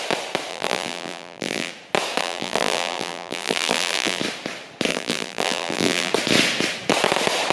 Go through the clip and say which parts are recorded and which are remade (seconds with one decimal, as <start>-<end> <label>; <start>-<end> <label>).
0.0-0.5 recorded; 0.5-1.7 remade; 1.7-2.2 recorded; 2.2-4.2 remade; 4.2-4.9 recorded; 4.9-6.1 remade; 6.1-7.5 recorded